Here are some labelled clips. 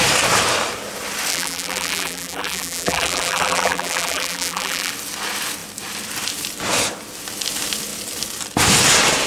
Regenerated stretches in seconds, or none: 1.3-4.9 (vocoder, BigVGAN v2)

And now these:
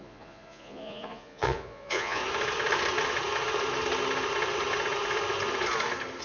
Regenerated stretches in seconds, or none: 0.0-2.2 (vocoder, Vocos)

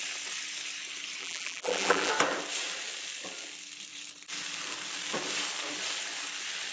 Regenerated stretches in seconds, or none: 1.2-2.1 (vocoder, BigVGAN v2)

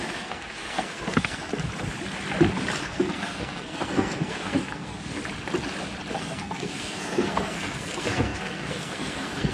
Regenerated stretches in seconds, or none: 0.0-1.5 (codec, SNAC); 2.8-5.2; 6.1-9.5

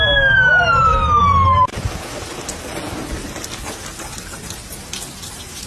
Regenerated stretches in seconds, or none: none

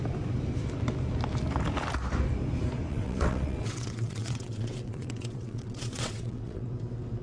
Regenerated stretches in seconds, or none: 2.9-6.7 (vocoder, WaveNeXt)

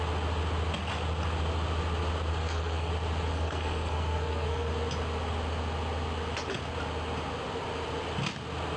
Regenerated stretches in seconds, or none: 2.3-2.9 (codec, SNAC); 3.3-4.7

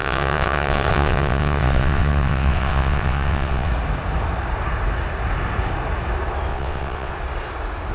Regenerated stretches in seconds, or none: 0.0-3.7 (vocoder, WaveNeXt); 6.5-7.1